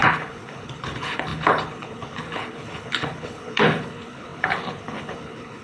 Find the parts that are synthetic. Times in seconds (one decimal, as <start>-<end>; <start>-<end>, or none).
0.0-5.6